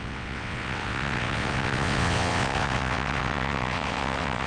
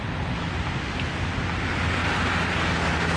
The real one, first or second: second